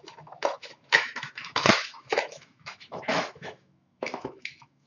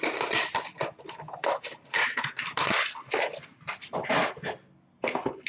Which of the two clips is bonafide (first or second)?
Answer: second